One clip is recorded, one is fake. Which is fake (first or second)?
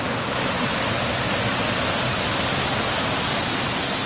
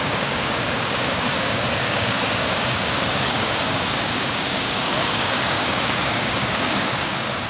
second